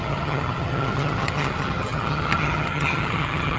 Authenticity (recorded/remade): remade